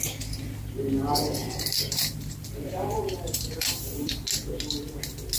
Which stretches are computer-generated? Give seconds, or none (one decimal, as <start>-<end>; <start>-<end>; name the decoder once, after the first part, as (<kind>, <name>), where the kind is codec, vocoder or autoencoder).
1.4-4.1 (vocoder, BigVGAN v2)